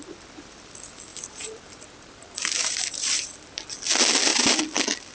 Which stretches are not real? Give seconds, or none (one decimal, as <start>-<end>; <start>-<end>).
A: 1.1-3.4